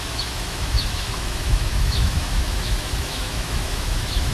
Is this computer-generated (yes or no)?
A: yes